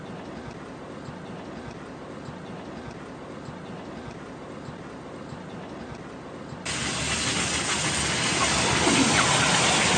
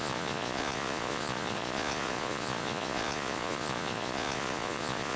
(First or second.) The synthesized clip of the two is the second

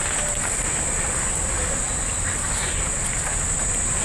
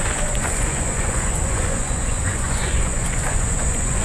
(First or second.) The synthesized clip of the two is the second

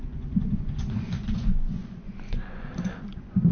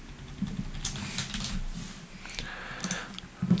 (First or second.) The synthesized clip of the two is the first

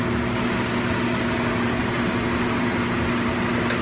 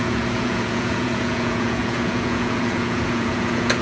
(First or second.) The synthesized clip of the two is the second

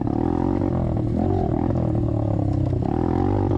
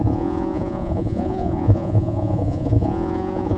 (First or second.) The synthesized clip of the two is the second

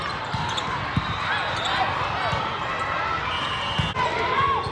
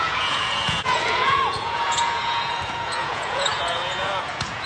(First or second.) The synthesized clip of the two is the second